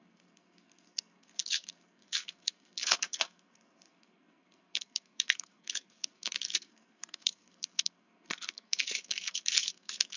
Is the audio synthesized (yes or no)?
yes